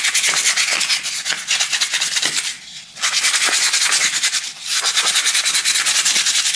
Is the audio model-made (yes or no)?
no